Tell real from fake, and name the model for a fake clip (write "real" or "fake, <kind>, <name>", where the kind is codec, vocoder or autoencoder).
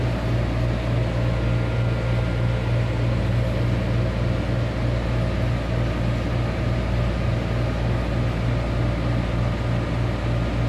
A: real